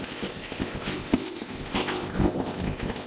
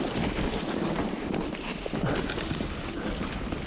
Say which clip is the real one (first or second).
second